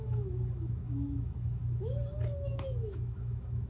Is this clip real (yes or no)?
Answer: no